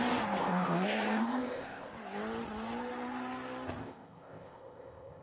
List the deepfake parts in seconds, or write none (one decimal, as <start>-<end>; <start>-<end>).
0.4-1.9; 3.8-5.2